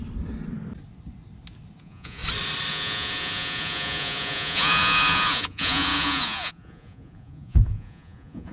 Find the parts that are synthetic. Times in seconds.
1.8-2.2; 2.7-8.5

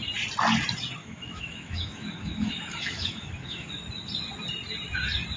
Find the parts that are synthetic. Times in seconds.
1.0-3.7

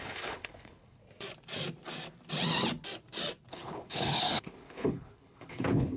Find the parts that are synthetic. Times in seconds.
0.0-1.0; 3.5-6.0

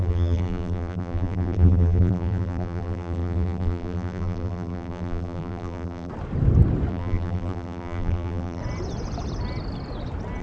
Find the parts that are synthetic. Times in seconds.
0.0-6.1; 6.9-8.6

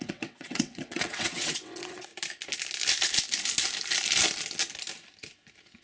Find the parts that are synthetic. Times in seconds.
0.0-2.1

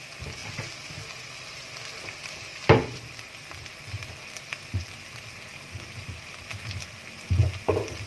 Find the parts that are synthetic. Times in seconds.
0.4-1.5; 2.5-3.2

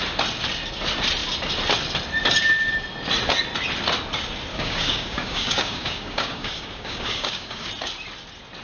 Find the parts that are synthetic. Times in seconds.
4.5-7.7